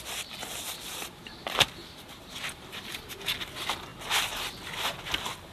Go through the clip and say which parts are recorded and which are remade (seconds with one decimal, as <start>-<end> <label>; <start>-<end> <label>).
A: 0.0-1.8 recorded; 1.8-3.1 remade; 3.1-5.5 recorded